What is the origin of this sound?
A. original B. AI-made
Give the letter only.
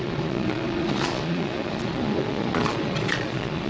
B